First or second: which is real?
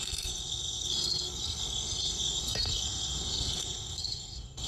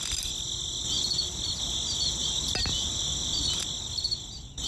second